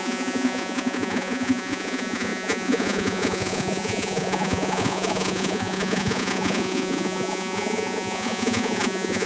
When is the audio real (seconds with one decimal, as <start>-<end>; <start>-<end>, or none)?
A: none